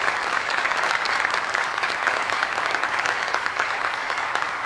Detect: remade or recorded remade